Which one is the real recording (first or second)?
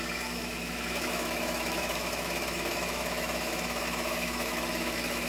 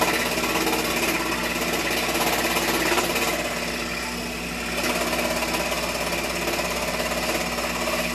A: second